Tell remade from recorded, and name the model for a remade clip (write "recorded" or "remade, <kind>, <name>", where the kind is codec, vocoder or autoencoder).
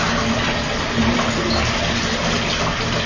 recorded